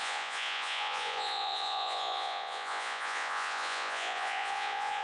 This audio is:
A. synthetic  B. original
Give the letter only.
A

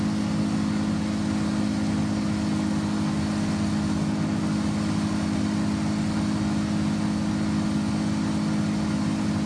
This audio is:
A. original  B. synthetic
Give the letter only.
A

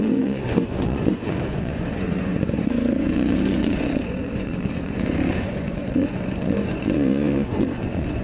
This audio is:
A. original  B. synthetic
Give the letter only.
B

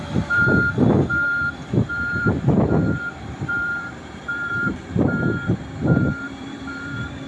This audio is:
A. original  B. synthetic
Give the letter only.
B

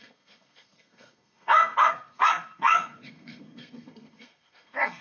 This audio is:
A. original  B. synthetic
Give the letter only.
B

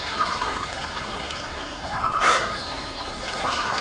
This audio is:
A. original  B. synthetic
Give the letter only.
B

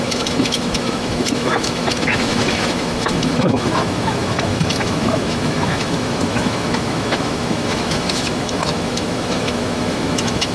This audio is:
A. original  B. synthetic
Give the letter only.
B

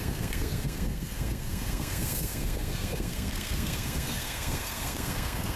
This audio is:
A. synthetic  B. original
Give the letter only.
A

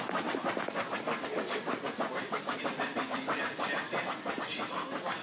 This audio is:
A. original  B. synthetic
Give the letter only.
A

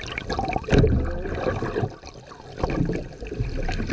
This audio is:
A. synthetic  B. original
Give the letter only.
B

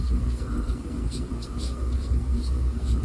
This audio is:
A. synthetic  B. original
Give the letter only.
A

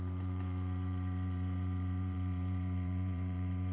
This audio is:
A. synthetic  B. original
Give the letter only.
A